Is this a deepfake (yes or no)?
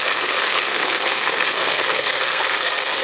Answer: yes